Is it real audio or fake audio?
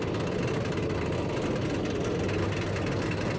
real